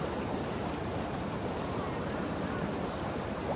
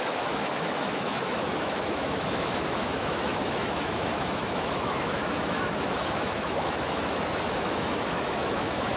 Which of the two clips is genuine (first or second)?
first